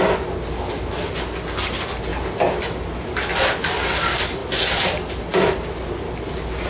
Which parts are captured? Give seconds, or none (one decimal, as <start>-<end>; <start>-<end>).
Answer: 0.0-6.7